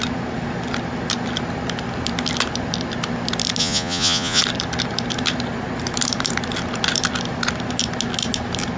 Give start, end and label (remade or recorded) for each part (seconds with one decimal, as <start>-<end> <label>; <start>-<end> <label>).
0.0-3.6 recorded; 3.6-4.4 remade; 4.4-8.8 recorded